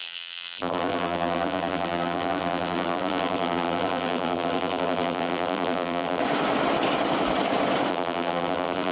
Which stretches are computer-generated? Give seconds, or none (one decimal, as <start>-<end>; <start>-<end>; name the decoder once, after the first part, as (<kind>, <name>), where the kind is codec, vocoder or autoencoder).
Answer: 0.0-6.2 (vocoder, BigVGAN v2); 7.9-8.9